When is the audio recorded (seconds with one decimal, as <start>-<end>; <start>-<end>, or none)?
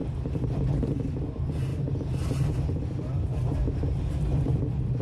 0.8-1.7